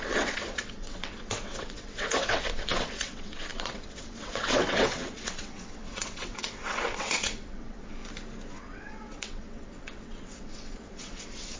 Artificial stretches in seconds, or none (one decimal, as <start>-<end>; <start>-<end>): 0.0-8.0; 8.5-11.6